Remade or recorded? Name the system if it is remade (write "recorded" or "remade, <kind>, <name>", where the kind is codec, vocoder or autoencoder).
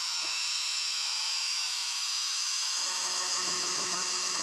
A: remade, autoencoder, DAC-VAE